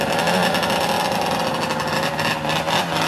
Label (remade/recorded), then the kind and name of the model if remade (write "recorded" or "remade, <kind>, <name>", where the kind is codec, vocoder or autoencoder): recorded